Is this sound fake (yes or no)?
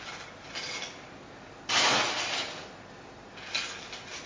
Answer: no